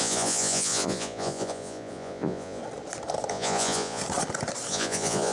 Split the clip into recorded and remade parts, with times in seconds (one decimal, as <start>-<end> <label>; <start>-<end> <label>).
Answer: 0.0-2.6 remade; 2.6-3.3 recorded; 3.3-4.0 remade; 4.0-4.7 recorded; 4.7-5.3 remade